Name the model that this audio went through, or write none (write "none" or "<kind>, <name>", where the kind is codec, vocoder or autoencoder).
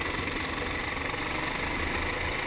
none